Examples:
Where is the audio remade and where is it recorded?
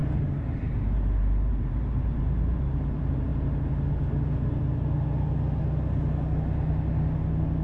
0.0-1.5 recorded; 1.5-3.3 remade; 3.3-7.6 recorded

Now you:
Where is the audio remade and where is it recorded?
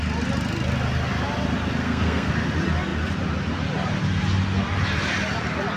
0.0-1.8 recorded; 1.8-2.3 remade; 2.3-5.8 recorded